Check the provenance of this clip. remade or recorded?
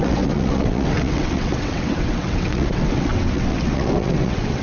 remade